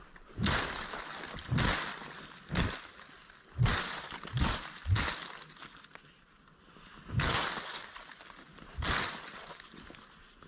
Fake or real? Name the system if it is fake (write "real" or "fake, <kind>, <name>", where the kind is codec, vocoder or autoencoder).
real